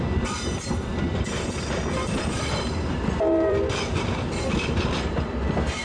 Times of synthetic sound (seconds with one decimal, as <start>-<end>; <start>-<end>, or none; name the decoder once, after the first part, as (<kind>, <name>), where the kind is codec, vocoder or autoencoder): 0.0-5.8 (vocoder, BigVGAN v2)